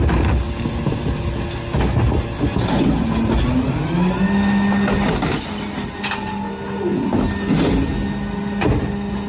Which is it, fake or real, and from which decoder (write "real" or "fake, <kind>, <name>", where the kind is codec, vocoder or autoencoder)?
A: real